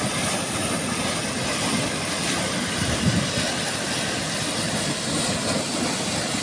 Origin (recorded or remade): recorded